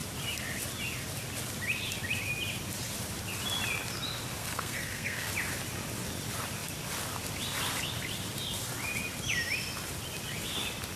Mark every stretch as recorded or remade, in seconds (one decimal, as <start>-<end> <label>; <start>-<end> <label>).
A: 0.0-4.4 recorded; 4.4-5.3 remade; 5.3-11.0 recorded